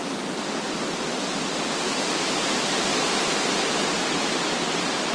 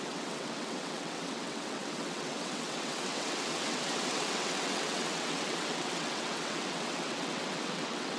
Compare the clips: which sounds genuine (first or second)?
first